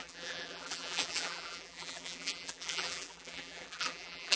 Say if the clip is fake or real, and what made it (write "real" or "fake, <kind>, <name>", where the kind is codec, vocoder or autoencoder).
fake, vocoder, BigVGAN v2